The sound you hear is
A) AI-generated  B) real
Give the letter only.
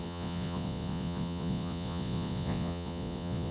A